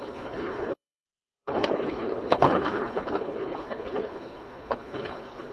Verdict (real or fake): fake